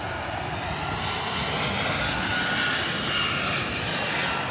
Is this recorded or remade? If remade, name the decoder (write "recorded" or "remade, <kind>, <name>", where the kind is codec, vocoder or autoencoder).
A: recorded